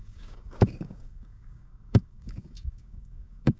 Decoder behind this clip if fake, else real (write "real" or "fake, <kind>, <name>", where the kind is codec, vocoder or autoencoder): fake, codec, DAC